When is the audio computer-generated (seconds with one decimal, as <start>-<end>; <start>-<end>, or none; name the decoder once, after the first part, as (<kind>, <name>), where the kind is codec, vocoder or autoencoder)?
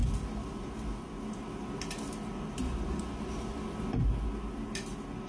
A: none